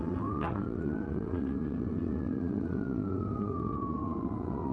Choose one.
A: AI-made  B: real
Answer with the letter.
A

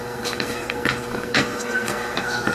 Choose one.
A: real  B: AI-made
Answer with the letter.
B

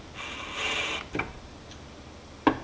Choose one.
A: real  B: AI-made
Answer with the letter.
A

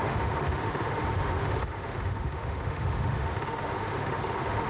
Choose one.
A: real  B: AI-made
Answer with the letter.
B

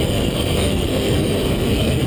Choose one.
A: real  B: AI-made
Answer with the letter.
B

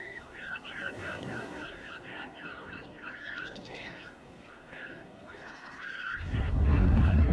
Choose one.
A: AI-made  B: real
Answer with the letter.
A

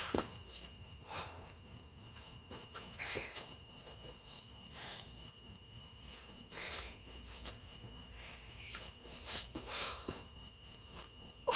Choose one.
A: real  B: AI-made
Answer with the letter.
B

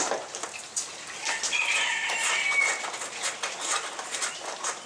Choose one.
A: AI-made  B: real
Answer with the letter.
B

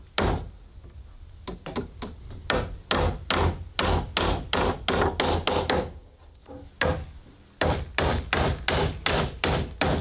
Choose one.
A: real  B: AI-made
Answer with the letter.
A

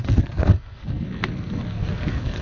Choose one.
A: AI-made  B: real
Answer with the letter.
A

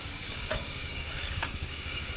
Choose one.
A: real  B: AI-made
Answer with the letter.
B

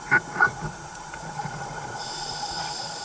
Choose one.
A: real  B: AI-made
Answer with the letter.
B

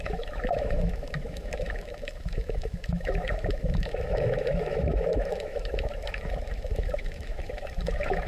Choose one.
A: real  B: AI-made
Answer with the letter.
B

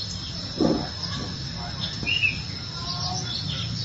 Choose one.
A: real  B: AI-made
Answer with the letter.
A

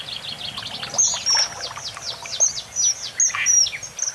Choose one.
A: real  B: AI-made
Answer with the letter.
A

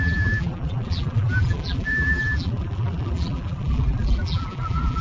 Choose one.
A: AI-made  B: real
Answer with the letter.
A